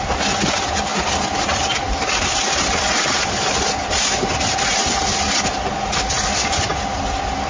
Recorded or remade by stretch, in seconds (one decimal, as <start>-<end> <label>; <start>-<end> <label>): 0.0-7.5 recorded